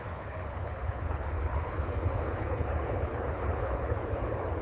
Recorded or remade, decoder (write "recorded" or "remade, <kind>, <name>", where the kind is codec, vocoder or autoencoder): remade, codec, HILCodec